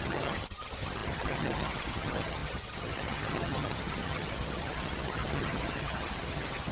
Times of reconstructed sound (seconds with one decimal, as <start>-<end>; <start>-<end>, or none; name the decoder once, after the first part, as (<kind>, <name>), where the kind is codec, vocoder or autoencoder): 0.0-6.7 (vocoder, HiFi-GAN)